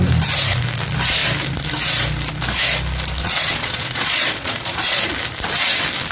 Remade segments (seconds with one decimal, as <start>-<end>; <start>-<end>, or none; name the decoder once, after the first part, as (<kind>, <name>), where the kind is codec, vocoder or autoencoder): 3.2-5.1 (vocoder, Vocos)